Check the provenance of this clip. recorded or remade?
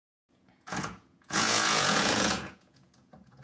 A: remade